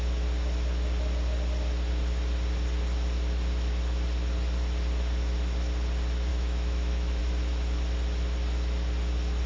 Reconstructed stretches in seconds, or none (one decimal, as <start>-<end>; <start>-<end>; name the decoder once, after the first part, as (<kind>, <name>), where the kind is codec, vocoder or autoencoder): 6.3-7.2 (autoencoder, DAC-VAE)